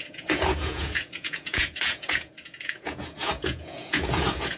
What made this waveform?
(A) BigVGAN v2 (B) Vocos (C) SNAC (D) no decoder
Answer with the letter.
B